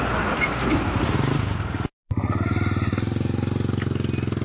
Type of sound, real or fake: real